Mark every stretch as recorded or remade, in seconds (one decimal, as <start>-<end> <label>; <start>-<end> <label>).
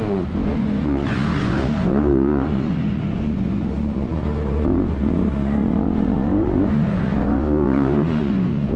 0.0-8.8 remade